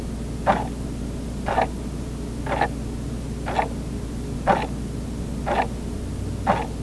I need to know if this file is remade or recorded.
recorded